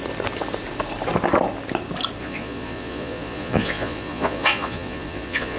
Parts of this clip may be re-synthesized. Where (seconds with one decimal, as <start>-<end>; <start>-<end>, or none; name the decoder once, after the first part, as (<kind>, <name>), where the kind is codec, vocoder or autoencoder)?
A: 2.2-5.6 (vocoder, Vocos)